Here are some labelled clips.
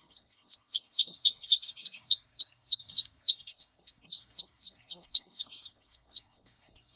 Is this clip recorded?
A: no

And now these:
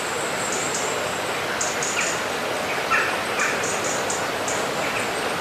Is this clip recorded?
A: yes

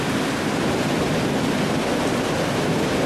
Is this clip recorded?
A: yes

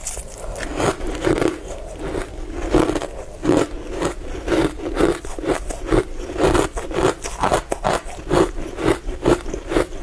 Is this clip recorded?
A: yes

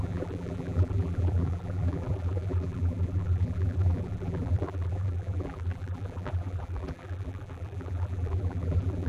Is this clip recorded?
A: no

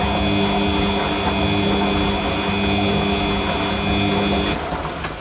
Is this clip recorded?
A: yes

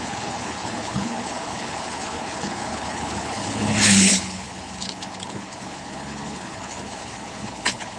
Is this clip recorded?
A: no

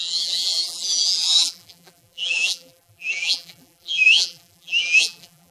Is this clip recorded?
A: no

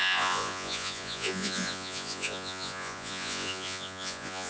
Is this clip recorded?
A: no